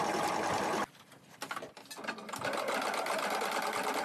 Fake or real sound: real